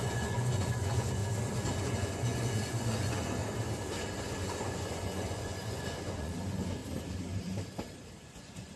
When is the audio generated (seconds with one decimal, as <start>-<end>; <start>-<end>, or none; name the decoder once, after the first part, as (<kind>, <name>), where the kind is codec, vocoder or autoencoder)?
0.0-1.2 (vocoder, Vocos); 1.8-3.4; 4.2-6.8; 8.2-8.8